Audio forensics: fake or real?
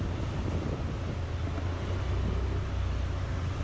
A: real